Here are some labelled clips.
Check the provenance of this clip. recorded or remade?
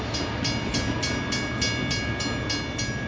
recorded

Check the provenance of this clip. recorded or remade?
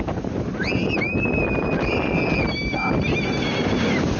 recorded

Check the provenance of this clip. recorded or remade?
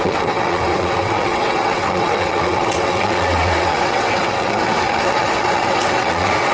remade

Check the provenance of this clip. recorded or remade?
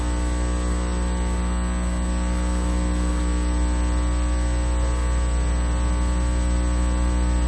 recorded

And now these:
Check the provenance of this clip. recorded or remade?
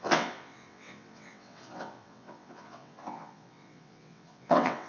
remade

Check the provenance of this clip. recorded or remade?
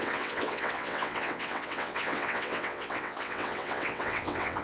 remade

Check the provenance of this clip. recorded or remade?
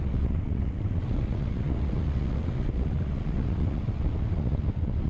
remade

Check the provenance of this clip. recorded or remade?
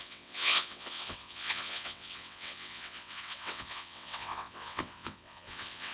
remade